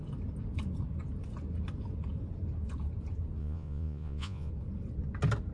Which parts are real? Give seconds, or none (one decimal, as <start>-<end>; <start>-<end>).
0.0-3.4; 4.5-5.5

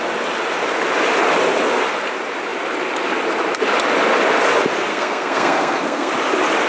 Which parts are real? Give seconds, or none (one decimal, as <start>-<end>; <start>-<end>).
0.0-4.9; 6.1-6.7

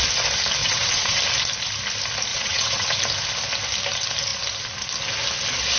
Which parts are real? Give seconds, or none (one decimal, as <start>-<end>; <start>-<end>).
0.0-0.6; 1.2-2.3; 3.0-5.8

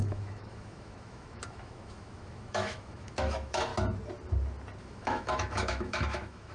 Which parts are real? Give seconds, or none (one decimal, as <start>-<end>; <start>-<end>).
3.7-4.8

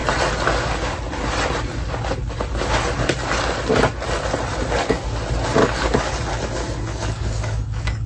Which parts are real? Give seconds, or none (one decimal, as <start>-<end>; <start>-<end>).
0.0-5.6; 6.1-6.9

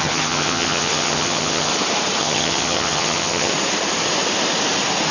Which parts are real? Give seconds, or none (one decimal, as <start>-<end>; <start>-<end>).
1.7-2.2; 3.5-5.1

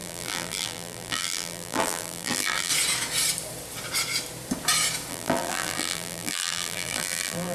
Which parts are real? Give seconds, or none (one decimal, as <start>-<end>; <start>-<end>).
2.7-5.1

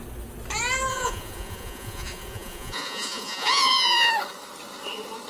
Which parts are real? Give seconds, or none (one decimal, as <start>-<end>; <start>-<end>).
0.0-0.9; 4.1-5.3